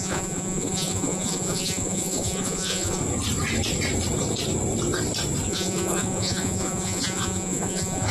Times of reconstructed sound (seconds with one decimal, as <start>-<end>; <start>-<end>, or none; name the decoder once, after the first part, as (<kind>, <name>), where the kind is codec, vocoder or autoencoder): 0.0-3.0 (vocoder, Vocos); 5.5-8.1